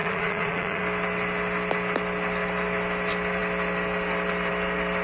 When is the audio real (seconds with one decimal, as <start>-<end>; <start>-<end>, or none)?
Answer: 0.8-5.0